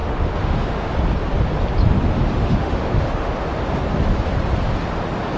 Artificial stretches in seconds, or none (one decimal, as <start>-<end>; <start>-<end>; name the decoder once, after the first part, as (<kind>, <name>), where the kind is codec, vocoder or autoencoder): 0.0-0.9 (autoencoder, DAC-VAE); 2.3-3.3